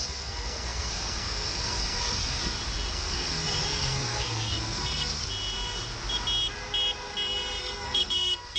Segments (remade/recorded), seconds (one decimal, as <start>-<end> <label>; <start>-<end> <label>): 0.0-2.4 remade; 2.4-2.9 recorded; 2.9-5.2 remade; 5.2-7.6 recorded; 7.6-8.6 remade